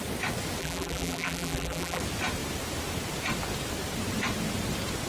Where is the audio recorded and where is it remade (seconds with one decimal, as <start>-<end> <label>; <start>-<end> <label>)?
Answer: 0.0-0.6 recorded; 0.6-2.0 remade; 2.0-5.1 recorded